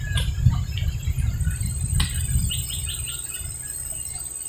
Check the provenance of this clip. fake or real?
real